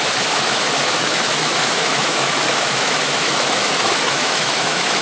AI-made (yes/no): yes